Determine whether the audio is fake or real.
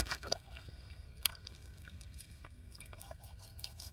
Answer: fake